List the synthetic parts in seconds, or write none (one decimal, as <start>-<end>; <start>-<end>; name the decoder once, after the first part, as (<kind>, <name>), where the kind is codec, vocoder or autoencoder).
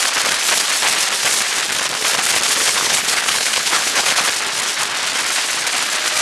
2.6-4.2 (codec, HILCodec)